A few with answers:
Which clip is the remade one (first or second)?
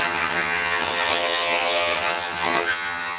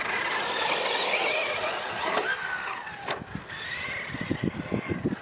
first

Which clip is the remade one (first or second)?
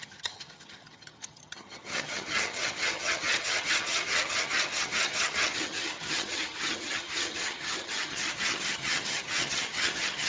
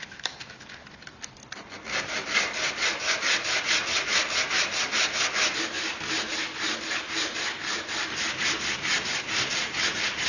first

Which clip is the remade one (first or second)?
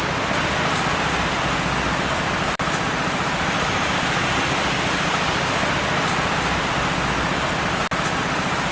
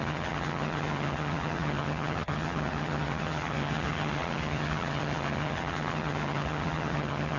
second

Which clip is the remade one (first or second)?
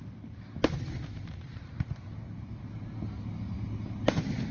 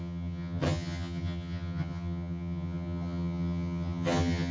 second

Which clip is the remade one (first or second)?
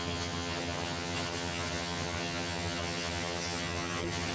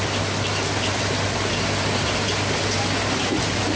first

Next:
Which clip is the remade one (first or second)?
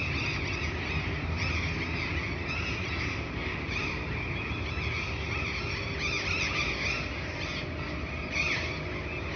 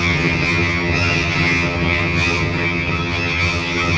second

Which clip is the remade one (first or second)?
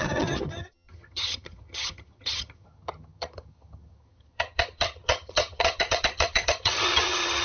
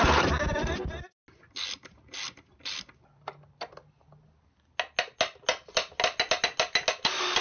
first